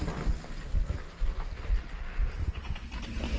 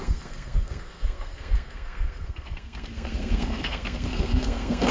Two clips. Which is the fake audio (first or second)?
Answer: second